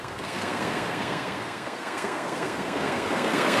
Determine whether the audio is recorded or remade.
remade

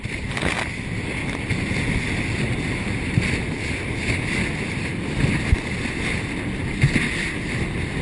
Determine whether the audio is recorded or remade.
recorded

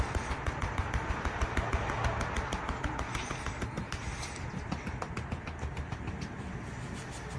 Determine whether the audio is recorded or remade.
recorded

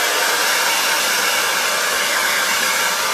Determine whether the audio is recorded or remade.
recorded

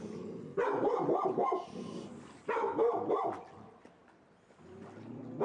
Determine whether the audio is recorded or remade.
recorded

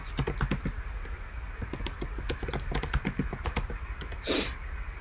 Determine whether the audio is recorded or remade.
recorded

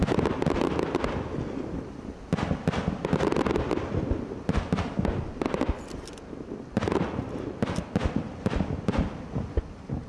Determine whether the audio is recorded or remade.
recorded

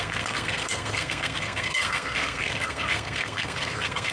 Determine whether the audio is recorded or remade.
remade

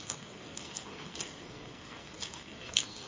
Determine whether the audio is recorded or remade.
remade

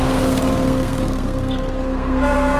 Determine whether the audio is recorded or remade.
remade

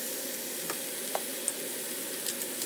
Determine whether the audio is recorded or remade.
recorded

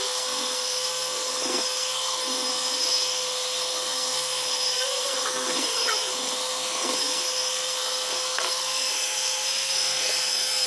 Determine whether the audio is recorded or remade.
remade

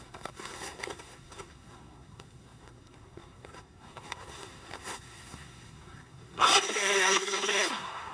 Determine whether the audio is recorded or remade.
remade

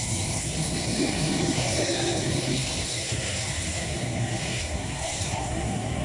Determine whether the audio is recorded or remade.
remade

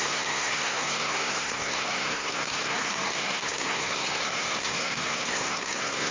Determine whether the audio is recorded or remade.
remade